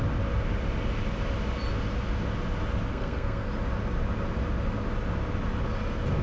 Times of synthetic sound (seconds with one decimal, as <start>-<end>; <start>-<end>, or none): 2.9-3.5